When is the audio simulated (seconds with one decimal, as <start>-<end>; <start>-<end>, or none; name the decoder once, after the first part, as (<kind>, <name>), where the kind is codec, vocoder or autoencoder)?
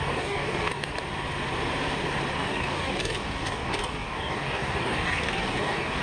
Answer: 0.0-0.9 (codec, DAC); 2.4-6.0